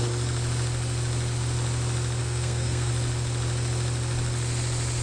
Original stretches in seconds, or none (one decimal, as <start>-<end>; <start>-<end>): 0.0-2.2; 2.9-5.0